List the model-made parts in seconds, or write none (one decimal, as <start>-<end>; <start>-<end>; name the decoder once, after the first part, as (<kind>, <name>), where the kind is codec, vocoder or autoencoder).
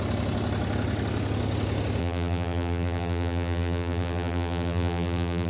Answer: 2.0-5.5 (vocoder, BigVGAN v2)